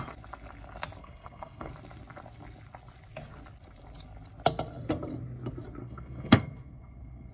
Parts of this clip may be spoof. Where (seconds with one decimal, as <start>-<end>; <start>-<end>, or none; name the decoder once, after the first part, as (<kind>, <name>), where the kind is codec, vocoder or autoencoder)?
1.0-1.7 (codec, SNAC); 5.8-7.3

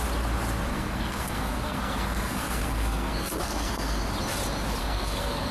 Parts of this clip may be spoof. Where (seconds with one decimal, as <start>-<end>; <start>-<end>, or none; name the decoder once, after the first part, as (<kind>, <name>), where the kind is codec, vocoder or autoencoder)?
0.7-4.0 (codec, SNAC); 4.8-5.5